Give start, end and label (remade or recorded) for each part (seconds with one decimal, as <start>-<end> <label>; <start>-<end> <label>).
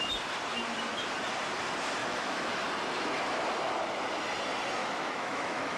0.0-2.0 recorded; 2.0-2.5 remade; 2.5-4.8 recorded; 4.8-5.8 remade